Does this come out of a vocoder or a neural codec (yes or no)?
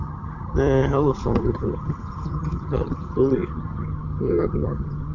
yes